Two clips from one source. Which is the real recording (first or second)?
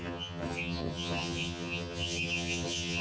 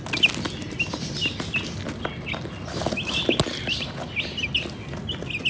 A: second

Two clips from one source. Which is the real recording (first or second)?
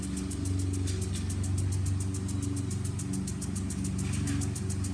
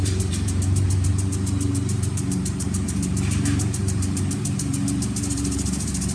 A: first